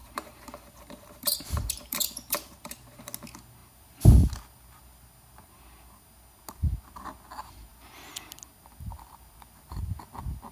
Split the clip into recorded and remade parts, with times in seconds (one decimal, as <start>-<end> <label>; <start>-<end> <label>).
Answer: 0.0-3.0 remade; 3.0-10.5 recorded